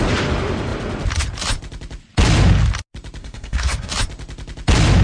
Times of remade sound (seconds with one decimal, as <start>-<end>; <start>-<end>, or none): 3.2-3.9